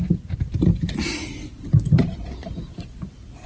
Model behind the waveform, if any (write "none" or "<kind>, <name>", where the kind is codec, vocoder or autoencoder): vocoder, BigVGAN v2